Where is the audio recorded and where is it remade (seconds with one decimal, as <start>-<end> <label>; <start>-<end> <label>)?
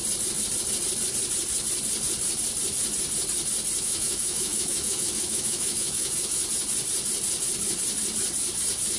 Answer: 0.0-3.8 recorded; 3.8-6.4 remade; 6.4-9.0 recorded